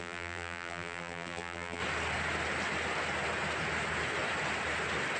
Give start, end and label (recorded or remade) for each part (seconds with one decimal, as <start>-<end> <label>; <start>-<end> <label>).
0.0-1.8 remade; 1.8-5.2 recorded